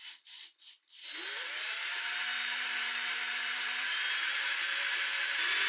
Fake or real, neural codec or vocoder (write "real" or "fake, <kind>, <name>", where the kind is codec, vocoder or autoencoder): fake, vocoder, BigVGAN v2